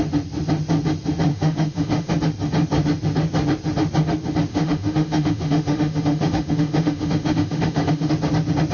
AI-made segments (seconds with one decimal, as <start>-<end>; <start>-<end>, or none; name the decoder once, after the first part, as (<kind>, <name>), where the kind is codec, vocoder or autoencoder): 1.3-2.1 (autoencoder, DAC-VAE); 4.5-8.1